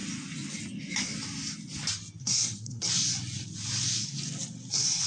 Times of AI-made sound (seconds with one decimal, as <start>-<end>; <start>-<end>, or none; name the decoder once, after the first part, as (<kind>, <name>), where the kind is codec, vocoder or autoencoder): 2.2-2.8 (codec, SNAC)